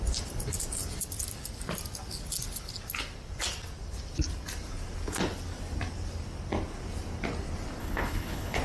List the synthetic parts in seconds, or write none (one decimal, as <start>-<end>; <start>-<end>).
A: 7.8-8.6

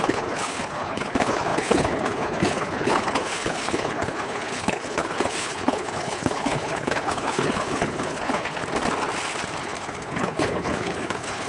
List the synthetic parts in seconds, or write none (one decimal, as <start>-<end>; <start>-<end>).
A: 0.0-8.6; 9.6-11.5

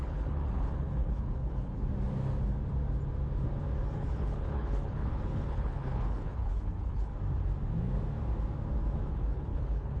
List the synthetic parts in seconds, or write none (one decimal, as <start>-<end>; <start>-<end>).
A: 0.0-1.8; 3.8-7.1; 9.1-10.0